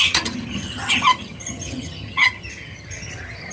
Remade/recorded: remade